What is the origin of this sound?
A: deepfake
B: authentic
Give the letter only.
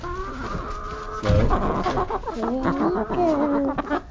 B